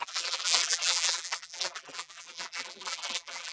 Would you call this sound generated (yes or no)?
yes